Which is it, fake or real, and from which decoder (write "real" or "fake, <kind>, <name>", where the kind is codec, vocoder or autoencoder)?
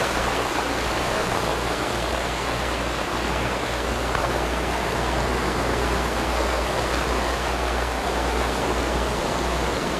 fake, codec, SNAC